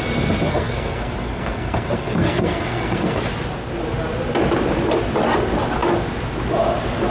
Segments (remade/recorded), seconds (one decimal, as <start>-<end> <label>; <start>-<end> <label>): 0.0-0.5 recorded; 0.5-3.2 remade; 3.2-7.1 recorded